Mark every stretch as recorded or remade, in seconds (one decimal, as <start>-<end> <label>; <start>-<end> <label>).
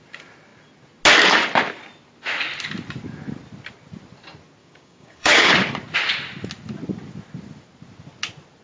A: 0.0-4.6 recorded; 4.6-5.5 remade; 5.5-8.6 recorded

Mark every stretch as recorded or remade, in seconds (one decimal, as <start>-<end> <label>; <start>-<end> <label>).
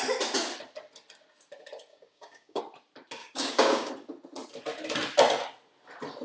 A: 0.0-1.9 recorded; 1.9-2.6 remade; 2.6-3.2 recorded; 3.2-3.9 remade; 3.9-6.2 recorded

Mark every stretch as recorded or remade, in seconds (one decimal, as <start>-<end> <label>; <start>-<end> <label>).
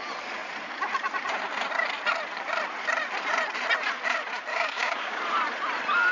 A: 0.0-4.5 recorded; 4.5-5.2 remade; 5.2-6.1 recorded